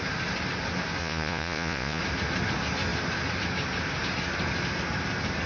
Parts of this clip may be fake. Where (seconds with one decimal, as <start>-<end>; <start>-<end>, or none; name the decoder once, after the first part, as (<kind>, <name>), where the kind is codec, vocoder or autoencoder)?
1.0-2.0 (vocoder, Vocos)